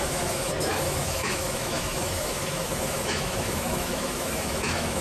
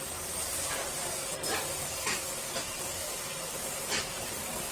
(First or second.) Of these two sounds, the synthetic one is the first